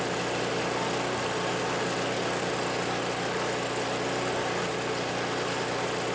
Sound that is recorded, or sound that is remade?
recorded